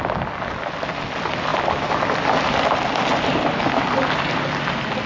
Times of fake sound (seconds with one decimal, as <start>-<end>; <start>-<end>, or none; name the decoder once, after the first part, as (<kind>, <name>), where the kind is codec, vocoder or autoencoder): none